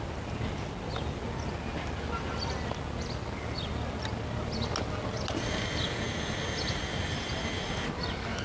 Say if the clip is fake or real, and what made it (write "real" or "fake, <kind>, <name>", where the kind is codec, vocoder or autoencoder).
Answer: real